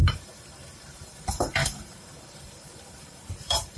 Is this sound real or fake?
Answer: fake